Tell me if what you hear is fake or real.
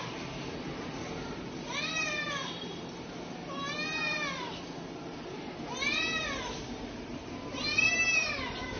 fake